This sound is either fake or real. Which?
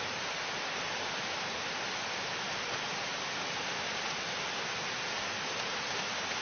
real